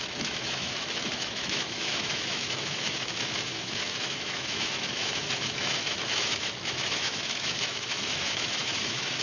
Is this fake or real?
fake